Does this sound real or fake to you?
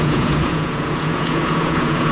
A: fake